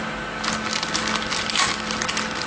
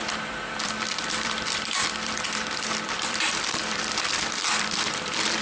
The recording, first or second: first